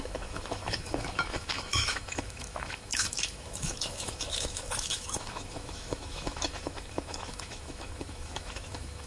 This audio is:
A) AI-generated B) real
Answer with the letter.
A